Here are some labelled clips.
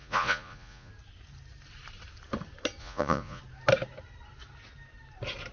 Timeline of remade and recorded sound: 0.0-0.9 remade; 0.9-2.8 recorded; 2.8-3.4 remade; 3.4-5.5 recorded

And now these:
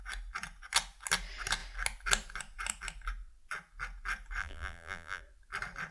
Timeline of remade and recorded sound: 0.0-4.4 recorded; 4.4-5.2 remade; 5.2-5.9 recorded

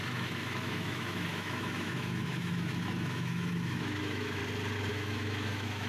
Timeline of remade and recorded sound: 0.0-4.4 remade; 4.4-4.9 recorded; 4.9-5.9 remade